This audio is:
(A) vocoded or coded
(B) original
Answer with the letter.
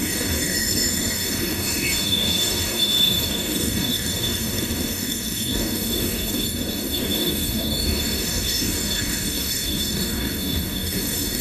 A